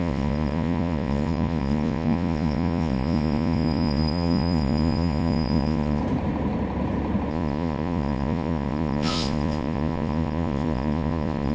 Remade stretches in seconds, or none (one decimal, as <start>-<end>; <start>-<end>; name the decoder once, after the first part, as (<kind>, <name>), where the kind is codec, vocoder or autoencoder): 0.0-6.0 (vocoder, Vocos); 7.3-11.5

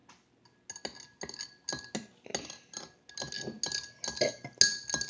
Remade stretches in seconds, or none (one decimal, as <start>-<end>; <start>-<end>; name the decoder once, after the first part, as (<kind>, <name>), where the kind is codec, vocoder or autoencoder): none

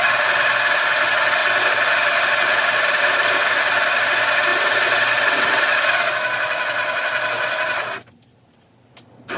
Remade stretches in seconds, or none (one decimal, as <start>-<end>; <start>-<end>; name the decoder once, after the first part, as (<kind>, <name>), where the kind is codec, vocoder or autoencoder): none

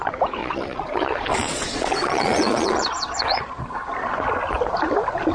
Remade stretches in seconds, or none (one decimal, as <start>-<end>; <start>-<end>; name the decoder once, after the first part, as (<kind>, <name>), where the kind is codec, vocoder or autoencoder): 0.4-3.6 (vocoder, Vocos)

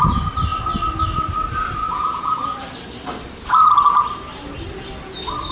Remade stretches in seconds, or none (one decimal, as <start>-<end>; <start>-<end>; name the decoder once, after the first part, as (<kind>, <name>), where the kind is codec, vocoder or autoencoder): 1.8-2.4 (vocoder, Vocos)

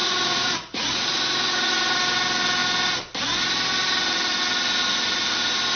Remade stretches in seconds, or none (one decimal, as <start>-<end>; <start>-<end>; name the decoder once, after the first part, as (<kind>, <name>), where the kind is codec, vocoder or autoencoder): 0.0-2.0 (vocoder, Vocos)

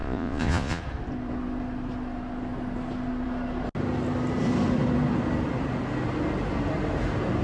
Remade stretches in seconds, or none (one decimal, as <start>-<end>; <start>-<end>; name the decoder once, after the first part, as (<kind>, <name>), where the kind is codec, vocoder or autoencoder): 0.0-0.8 (vocoder, Vocos)